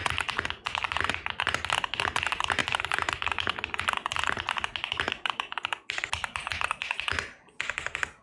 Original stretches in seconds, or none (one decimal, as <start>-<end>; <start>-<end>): 1.4-8.2